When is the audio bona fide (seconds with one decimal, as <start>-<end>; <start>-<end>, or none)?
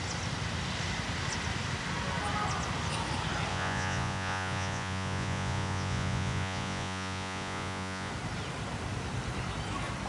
0.0-3.5; 8.1-10.1